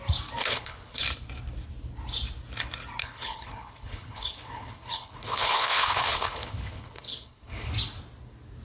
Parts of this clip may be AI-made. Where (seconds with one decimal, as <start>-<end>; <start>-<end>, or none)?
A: 0.4-1.0; 3.0-7.7